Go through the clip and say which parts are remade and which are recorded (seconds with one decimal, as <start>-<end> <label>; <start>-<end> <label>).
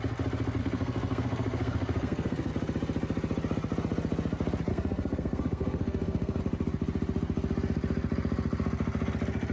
0.0-0.6 recorded; 0.6-2.5 remade; 2.5-4.7 recorded; 4.7-6.4 remade; 6.4-9.5 recorded